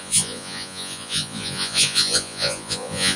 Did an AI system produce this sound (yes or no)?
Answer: yes